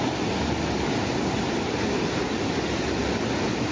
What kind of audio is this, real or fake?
real